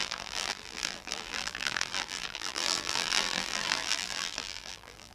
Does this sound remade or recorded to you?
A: remade